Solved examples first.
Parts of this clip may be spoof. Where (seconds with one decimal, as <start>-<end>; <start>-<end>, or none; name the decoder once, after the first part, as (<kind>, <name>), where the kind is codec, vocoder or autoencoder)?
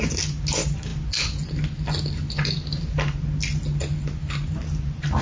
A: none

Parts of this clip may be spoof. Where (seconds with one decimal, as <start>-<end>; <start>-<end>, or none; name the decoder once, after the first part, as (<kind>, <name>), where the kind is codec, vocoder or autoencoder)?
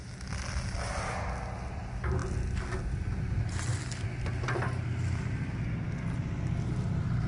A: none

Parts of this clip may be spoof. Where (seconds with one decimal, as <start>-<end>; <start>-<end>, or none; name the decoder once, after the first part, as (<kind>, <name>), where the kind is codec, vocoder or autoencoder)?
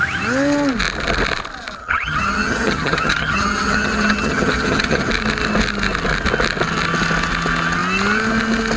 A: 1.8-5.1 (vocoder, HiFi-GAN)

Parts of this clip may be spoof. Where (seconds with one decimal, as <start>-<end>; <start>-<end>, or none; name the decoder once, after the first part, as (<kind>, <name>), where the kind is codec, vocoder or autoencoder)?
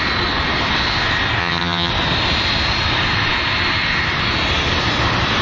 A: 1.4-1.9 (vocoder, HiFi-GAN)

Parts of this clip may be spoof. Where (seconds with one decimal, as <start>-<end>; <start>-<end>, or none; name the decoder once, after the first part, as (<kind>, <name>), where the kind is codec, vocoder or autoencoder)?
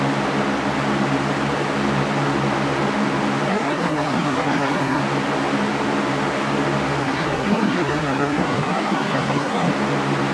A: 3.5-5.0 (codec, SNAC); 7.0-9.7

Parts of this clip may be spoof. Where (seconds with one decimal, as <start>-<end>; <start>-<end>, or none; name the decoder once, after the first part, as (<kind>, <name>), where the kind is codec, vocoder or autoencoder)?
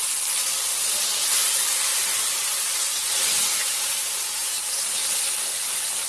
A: 1.9-5.1 (vocoder, BigVGAN v2)